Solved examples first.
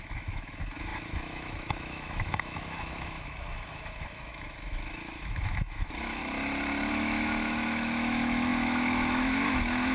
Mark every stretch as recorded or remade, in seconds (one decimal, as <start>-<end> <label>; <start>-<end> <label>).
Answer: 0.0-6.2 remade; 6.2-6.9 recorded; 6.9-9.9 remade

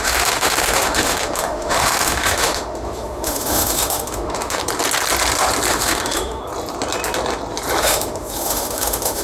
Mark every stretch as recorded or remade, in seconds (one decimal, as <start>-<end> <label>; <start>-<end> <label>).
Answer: 0.0-4.6 remade; 4.6-5.7 recorded; 5.7-6.4 remade; 6.4-7.8 recorded; 7.8-9.2 remade

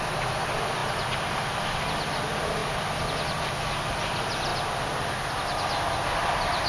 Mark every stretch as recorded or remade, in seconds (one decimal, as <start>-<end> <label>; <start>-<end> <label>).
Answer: 0.0-6.7 recorded